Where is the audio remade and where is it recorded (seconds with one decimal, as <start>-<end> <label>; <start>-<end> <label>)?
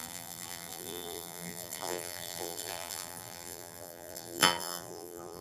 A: 0.0-5.4 remade